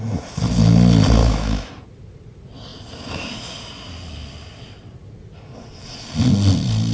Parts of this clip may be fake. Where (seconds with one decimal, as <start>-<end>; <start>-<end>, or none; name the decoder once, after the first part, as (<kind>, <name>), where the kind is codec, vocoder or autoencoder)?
1.2-1.7 (autoencoder, DAC-VAE)